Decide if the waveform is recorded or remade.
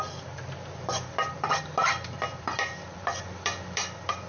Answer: remade